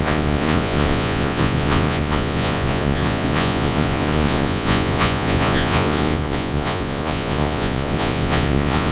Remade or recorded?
remade